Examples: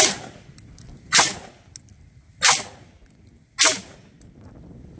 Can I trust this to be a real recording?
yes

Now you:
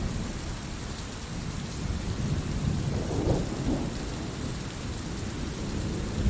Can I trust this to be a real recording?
no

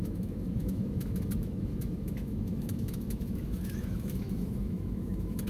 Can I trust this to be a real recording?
no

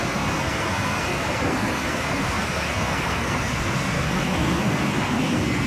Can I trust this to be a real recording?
no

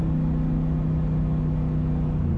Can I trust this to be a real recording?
yes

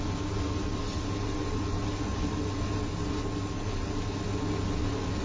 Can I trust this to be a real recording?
yes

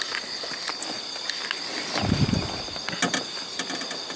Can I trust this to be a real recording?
yes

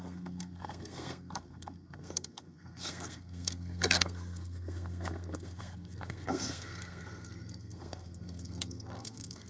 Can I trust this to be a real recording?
no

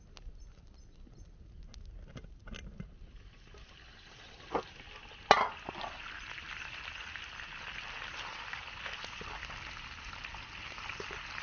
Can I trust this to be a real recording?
yes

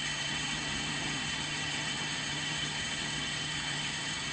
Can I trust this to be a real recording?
no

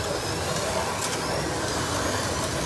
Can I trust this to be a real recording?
yes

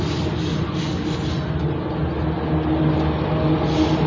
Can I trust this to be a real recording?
yes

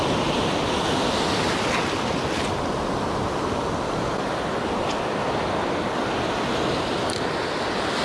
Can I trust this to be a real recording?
yes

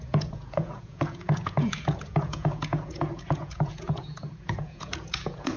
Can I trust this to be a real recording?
no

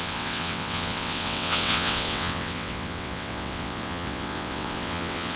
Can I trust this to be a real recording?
no